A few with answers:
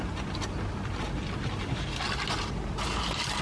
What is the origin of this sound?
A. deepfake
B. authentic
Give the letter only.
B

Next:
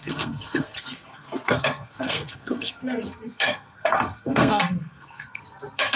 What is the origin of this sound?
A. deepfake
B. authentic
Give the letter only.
A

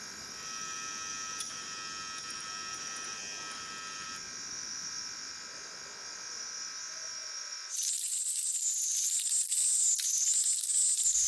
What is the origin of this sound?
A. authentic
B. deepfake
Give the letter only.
A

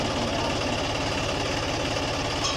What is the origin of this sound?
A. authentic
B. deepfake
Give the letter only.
A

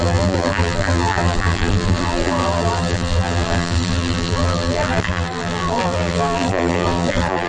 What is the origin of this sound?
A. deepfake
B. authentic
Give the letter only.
A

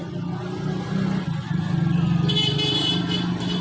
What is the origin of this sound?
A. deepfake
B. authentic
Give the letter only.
B